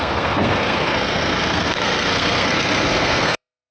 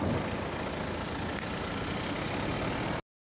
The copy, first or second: first